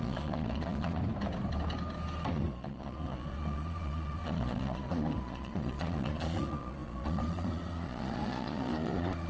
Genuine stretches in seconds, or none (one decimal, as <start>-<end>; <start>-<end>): 1.0-2.3